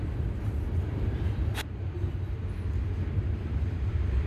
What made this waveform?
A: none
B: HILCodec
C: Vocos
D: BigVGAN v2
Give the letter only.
D